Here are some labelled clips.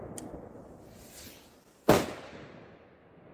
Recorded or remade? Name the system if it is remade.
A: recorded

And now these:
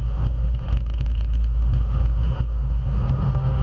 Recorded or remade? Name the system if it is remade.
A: remade, autoencoder, DAC-VAE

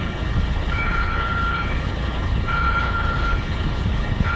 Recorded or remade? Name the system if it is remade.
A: remade, codec, HILCodec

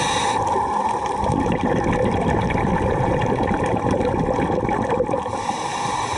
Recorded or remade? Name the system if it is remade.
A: recorded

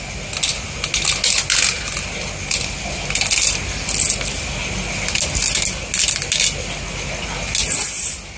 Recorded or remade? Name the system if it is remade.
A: recorded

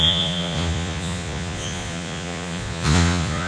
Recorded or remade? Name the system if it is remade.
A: remade, vocoder, Vocos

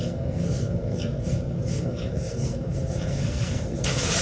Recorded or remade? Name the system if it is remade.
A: remade, codec, SNAC